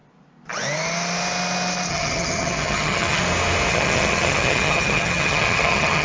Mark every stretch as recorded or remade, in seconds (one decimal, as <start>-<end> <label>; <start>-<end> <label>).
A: 0.0-1.9 recorded; 1.9-3.2 remade; 3.2-3.7 recorded; 3.7-6.0 remade